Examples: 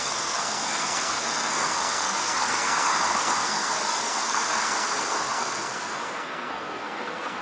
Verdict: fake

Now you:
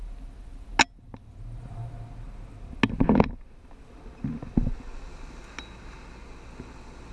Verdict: real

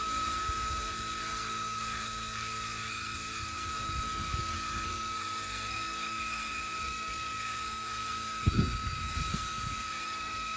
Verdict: fake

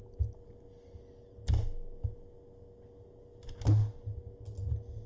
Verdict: real